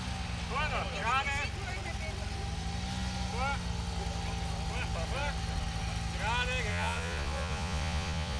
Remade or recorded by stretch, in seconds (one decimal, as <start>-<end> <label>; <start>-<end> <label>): 0.0-6.7 recorded; 6.7-8.4 remade